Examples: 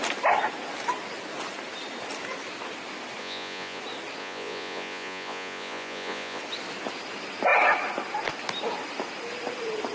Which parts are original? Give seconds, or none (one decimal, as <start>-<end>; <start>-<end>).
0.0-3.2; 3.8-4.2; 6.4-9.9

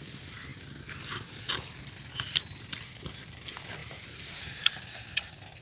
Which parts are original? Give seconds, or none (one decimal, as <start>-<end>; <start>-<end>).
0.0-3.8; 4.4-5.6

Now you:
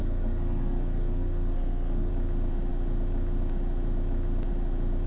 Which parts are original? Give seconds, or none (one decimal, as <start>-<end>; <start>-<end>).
2.1-5.1